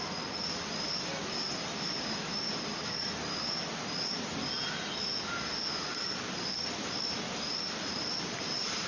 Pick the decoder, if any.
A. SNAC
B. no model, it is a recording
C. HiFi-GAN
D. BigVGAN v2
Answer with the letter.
B